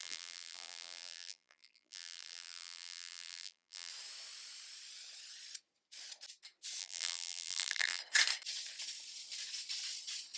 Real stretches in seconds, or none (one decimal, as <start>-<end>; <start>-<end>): 3.9-6.8; 8.0-10.4